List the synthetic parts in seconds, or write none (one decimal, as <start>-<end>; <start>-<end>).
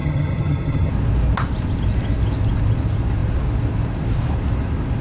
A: 0.0-0.9